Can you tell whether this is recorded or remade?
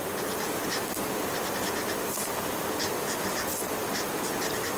recorded